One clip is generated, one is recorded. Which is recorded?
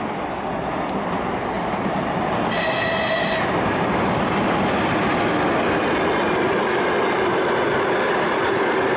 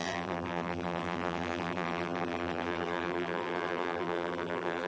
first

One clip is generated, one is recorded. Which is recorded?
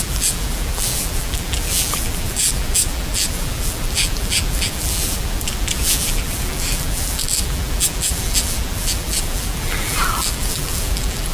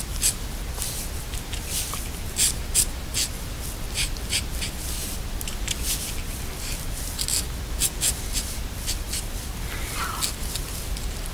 second